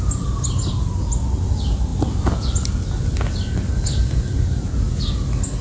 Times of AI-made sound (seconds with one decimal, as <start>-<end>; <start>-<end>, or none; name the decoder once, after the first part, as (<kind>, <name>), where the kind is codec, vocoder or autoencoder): none